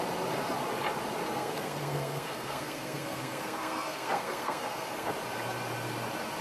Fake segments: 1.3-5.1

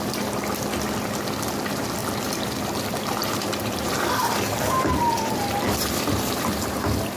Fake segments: 2.0-6.3